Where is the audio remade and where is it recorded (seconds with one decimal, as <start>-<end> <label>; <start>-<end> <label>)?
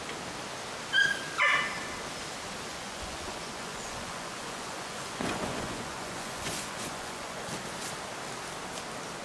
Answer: 0.0-2.7 recorded; 2.7-7.5 remade; 7.5-9.2 recorded